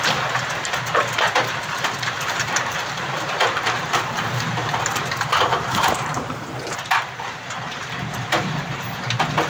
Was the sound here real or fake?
fake